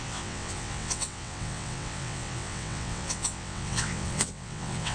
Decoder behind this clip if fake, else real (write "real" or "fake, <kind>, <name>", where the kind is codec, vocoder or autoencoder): fake, vocoder, WaveNeXt